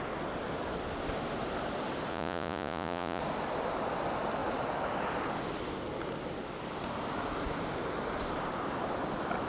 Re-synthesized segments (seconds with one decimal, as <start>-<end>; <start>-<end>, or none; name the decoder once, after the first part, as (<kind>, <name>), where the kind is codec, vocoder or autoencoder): 2.1-3.2 (vocoder, Vocos)